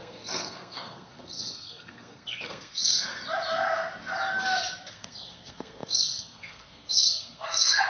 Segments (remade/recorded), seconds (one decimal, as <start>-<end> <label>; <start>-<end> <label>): 0.0-3.2 remade; 3.2-4.9 recorded; 4.9-7.9 remade